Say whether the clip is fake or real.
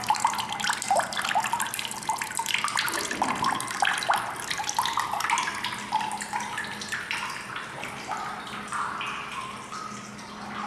real